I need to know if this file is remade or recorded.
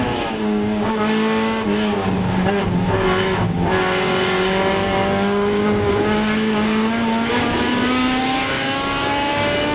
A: remade